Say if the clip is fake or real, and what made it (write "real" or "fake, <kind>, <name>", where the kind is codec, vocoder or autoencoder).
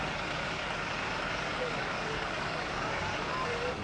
fake, codec, DAC